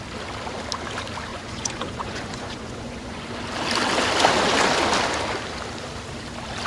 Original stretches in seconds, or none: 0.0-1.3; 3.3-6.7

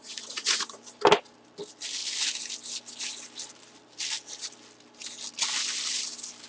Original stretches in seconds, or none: 0.8-6.5

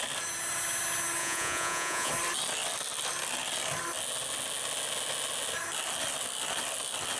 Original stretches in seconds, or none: 0.0-1.2; 2.1-7.2

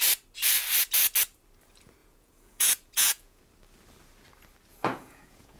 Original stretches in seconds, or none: 0.0-2.0; 3.4-4.7

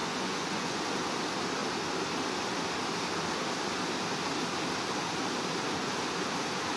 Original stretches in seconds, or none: 0.8-6.8

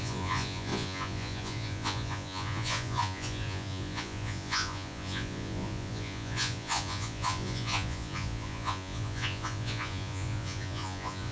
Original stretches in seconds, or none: none